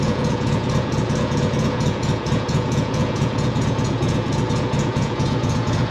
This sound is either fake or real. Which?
fake